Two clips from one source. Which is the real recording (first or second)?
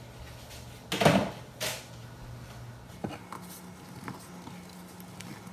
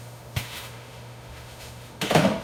first